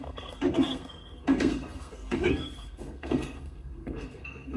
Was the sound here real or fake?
fake